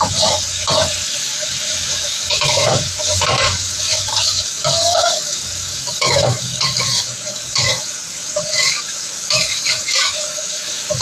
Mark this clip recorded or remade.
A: remade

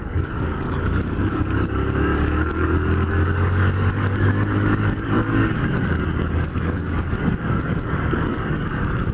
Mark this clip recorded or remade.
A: remade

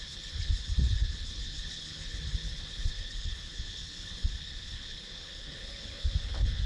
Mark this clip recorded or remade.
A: remade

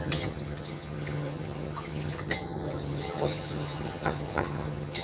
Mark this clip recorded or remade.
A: remade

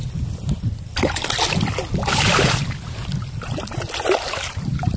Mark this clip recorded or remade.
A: recorded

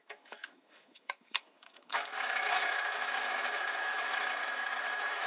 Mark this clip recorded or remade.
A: remade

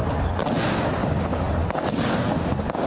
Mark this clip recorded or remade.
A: recorded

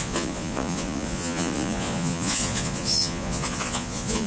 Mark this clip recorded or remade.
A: remade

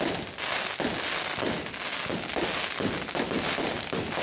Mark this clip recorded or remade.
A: recorded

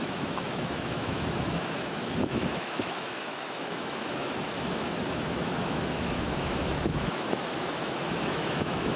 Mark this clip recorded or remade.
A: remade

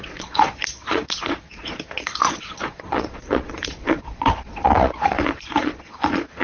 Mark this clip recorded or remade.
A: remade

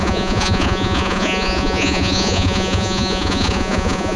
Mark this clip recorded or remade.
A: remade